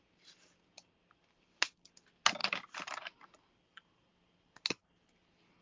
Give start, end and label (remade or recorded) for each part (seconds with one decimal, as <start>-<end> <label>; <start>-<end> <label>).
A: 0.0-5.6 recorded